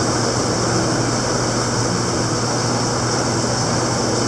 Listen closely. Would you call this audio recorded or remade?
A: recorded